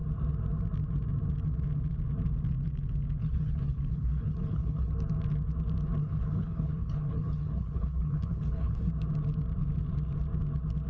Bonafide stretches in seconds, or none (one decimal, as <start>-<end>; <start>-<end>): 0.0-3.2; 4.9-6.0; 8.9-10.9